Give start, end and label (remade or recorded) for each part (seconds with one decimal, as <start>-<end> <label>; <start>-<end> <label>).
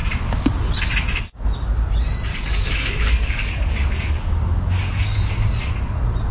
0.0-2.3 recorded; 2.3-5.3 remade; 5.3-6.3 recorded